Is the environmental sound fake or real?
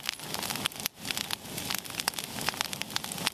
real